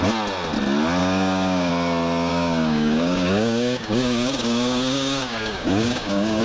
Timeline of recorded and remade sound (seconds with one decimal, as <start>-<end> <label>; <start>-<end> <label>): 0.0-1.0 recorded; 1.0-1.7 remade; 1.7-2.3 recorded; 2.3-6.4 remade